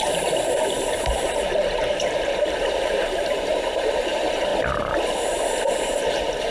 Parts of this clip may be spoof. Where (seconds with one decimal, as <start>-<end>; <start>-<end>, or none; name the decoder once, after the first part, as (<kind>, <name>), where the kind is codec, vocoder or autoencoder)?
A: 0.0-4.5 (vocoder, BigVGAN v2); 5.7-6.5